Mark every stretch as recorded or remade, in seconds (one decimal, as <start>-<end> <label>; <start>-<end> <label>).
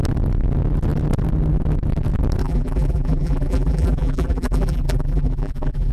0.0-2.4 recorded; 2.4-5.9 remade